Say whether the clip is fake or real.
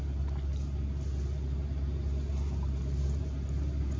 real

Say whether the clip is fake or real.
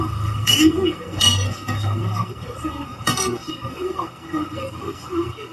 fake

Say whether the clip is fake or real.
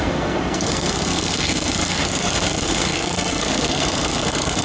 fake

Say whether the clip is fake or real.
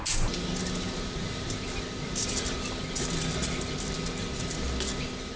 real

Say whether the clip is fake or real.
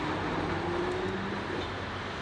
real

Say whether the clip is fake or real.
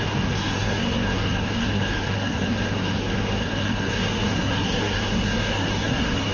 fake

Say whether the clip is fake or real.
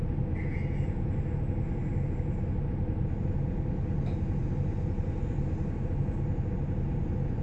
real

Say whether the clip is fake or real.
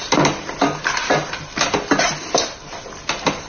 real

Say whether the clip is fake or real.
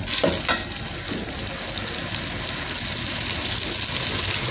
real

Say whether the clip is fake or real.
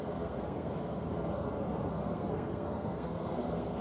fake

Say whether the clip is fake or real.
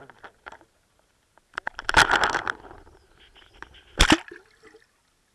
real